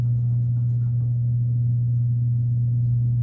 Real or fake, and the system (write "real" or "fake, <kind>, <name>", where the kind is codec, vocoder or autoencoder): real